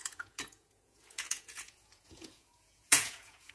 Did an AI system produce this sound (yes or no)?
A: yes